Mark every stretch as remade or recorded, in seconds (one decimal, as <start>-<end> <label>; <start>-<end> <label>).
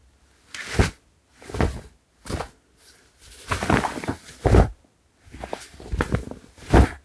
0.0-7.0 recorded